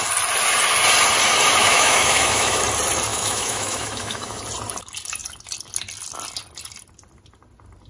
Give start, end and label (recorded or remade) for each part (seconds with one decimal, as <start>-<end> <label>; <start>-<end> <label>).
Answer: 0.0-1.6 recorded; 1.6-2.6 remade; 2.6-3.1 recorded; 3.1-4.4 remade; 4.4-7.9 recorded